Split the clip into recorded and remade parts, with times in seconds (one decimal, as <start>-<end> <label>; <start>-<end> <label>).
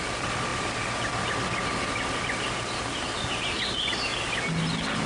0.0-0.5 remade; 0.5-3.6 recorded; 3.6-4.1 remade; 4.1-5.1 recorded